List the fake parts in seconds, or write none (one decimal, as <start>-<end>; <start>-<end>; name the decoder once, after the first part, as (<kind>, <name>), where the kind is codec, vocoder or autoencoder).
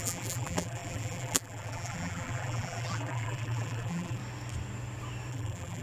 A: 0.0-4.2 (vocoder, BigVGAN v2); 5.3-5.8